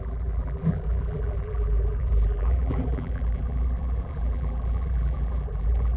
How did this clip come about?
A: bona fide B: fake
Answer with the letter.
B